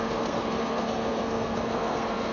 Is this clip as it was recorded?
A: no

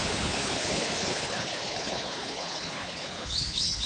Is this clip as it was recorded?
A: no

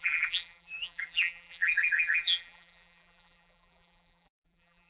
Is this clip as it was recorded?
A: no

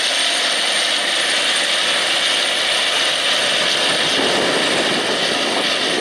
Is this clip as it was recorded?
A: yes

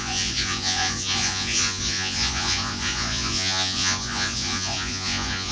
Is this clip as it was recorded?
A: no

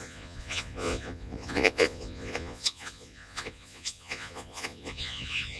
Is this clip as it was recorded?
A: no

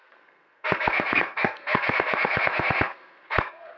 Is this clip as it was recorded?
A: no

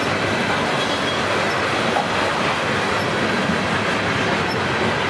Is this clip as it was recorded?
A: yes